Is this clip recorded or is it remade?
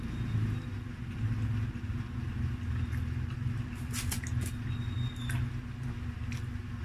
recorded